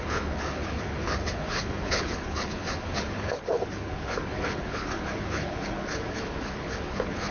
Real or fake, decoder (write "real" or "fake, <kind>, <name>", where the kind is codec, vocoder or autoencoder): fake, codec, HILCodec